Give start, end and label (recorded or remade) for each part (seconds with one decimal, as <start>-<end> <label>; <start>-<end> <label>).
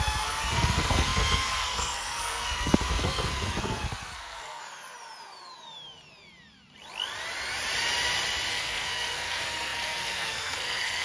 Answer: 0.0-4.6 remade; 4.6-8.5 recorded; 8.5-11.0 remade